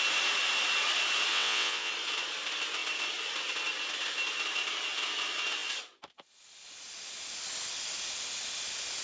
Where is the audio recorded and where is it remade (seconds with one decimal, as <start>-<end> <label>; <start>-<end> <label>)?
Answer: 0.0-1.3 recorded; 1.3-1.9 remade; 1.9-9.0 recorded